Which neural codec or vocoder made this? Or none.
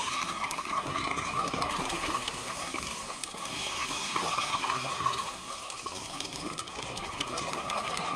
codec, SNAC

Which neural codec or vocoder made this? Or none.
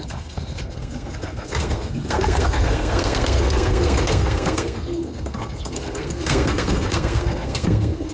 codec, SNAC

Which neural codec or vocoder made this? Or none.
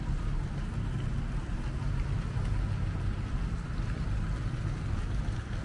none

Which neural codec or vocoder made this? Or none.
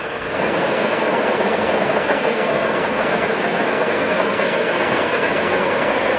codec, SNAC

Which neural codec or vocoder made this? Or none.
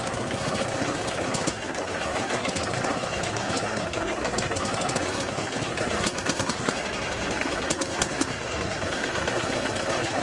codec, SNAC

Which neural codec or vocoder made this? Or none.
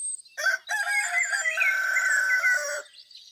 none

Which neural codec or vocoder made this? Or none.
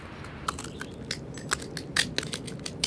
none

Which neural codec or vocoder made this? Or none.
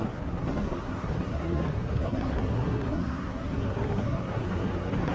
codec, SNAC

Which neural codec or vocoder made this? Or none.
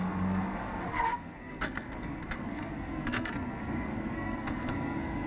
codec, SNAC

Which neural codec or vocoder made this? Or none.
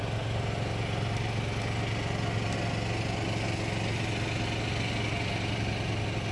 none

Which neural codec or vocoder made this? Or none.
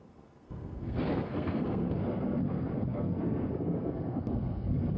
codec, SNAC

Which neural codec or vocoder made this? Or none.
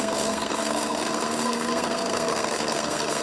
codec, SNAC